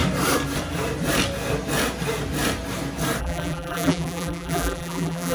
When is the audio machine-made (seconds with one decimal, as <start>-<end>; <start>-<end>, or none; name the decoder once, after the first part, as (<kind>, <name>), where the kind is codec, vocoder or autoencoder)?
3.2-5.3 (vocoder, BigVGAN v2)